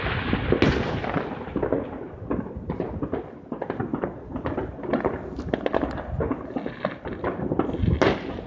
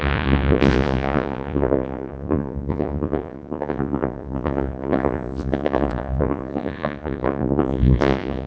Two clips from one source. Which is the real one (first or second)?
first